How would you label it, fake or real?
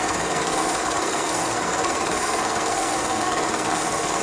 fake